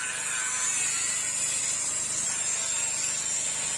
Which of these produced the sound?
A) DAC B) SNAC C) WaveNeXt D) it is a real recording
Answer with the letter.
D